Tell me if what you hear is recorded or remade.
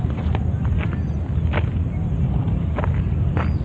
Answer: recorded